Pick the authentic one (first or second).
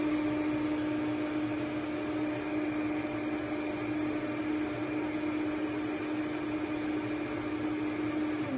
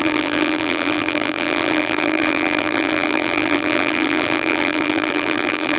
first